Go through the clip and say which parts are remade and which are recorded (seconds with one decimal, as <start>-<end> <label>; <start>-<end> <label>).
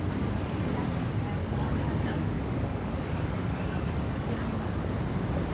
0.0-1.4 recorded; 1.4-4.6 remade; 4.6-5.5 recorded